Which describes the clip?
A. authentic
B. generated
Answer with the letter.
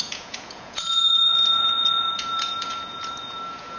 B